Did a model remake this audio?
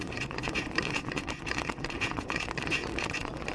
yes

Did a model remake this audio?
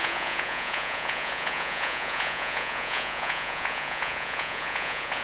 yes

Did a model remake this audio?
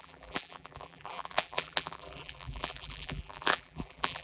yes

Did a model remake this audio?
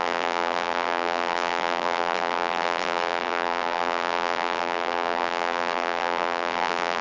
yes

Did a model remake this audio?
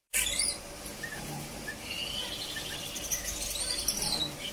yes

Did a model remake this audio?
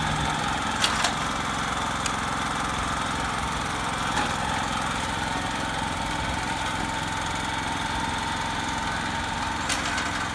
no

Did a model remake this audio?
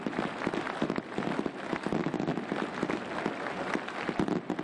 no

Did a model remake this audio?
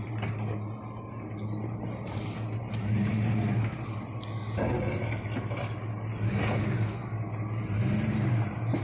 no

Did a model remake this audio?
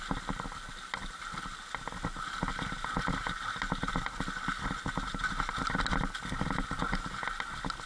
no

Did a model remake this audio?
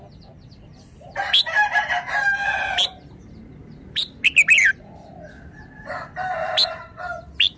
no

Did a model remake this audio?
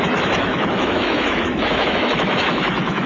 yes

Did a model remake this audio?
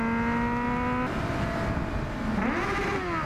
no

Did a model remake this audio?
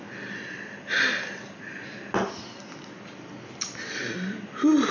no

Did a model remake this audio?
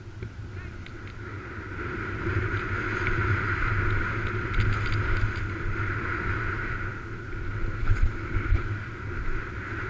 no